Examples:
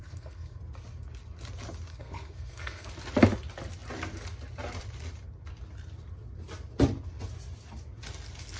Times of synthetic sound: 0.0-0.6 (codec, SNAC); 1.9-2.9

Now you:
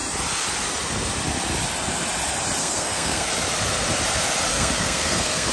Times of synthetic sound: 2.6-3.3 (codec, SNAC); 4.5-5.5

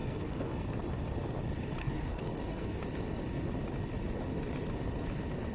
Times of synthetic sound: 0.0-0.8 (codec, SNAC); 1.8-2.8

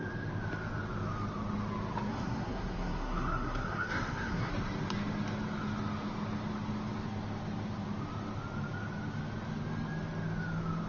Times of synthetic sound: 2.1-4.5 (codec, SNAC)

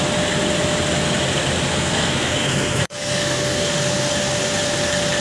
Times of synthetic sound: 1.7-3.7 (codec, SNAC)

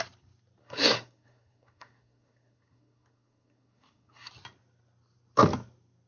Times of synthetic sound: 0.6-4.3 (codec, SNAC)

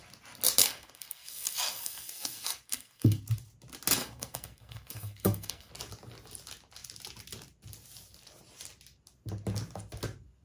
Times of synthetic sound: 0.6-3.2 (codec, SNAC); 4.0-5.7

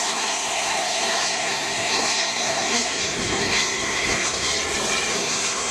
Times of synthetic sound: 0.0-4.5 (codec, SNAC); 5.1-5.7